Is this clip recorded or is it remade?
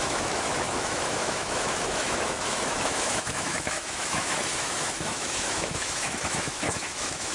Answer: remade